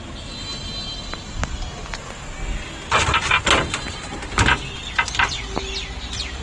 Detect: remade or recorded recorded